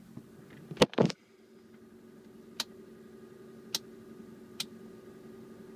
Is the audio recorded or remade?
recorded